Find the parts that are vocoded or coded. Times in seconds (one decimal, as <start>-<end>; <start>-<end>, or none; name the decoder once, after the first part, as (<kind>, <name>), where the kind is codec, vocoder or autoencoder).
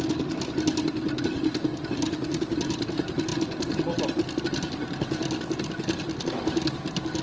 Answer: none